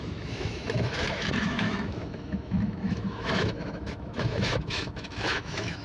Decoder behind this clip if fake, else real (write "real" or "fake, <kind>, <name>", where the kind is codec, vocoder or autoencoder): fake, autoencoder, DAC-VAE